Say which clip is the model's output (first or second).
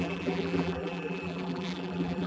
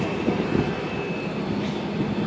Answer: first